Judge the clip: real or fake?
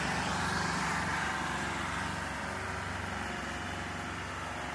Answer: real